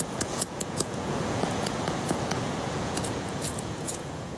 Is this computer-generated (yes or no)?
yes